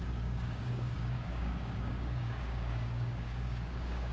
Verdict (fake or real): fake